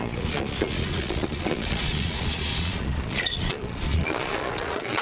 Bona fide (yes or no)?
no